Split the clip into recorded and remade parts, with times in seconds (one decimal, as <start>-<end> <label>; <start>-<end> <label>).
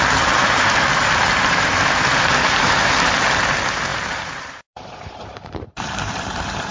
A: 0.0-0.4 recorded; 0.4-3.1 remade; 3.1-3.9 recorded; 3.9-6.7 remade